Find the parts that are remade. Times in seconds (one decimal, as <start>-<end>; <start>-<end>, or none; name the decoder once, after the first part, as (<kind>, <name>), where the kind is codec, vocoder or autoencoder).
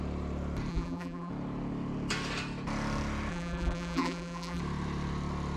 0.7-1.3 (vocoder, BigVGAN v2); 3.3-4.6